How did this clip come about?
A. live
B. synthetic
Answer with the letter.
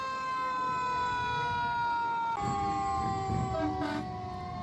A